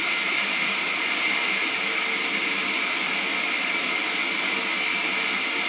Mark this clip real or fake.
real